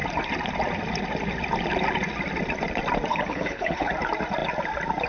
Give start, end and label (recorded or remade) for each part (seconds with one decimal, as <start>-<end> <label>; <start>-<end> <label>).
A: 0.0-3.1 recorded; 3.1-3.9 remade; 3.9-5.1 recorded